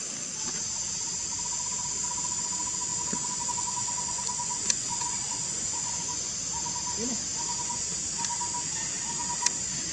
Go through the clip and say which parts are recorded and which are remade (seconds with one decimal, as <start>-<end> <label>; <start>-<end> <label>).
0.0-2.9 recorded; 2.9-6.3 remade; 6.3-7.3 recorded; 7.3-7.9 remade; 7.9-9.9 recorded